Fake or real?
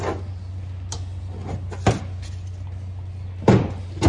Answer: real